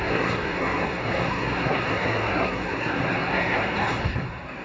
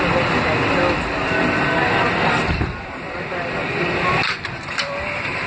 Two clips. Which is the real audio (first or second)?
second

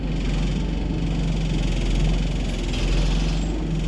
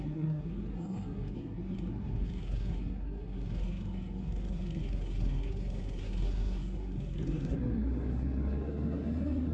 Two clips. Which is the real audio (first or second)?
first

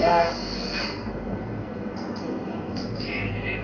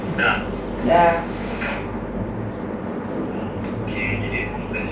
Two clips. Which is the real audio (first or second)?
second